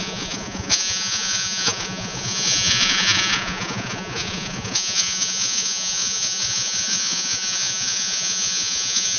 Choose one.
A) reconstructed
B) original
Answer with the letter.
A